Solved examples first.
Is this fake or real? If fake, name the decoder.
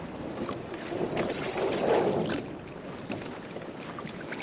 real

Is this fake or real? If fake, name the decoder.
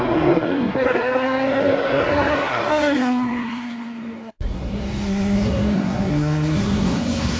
fake, codec, SNAC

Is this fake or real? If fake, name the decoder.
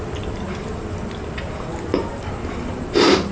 real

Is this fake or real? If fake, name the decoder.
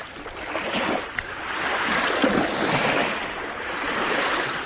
real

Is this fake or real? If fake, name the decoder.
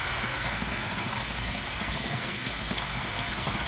fake, codec, SNAC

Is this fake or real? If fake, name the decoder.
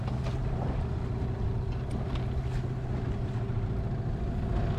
real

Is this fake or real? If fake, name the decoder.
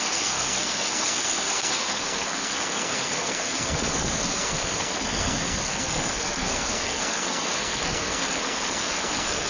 fake, codec, SNAC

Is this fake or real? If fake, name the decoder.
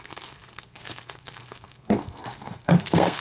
fake, codec, SNAC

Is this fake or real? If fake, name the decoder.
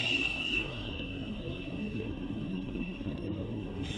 fake, codec, SNAC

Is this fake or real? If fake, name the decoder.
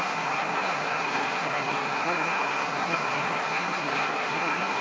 fake, codec, SNAC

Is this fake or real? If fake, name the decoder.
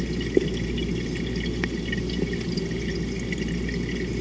real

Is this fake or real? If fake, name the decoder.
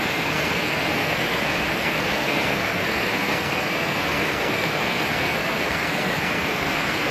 fake, codec, SNAC